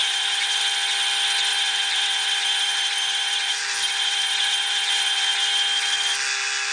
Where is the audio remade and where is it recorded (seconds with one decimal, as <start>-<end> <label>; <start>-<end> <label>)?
0.0-0.6 remade; 0.6-1.5 recorded; 1.5-5.4 remade; 5.4-6.7 recorded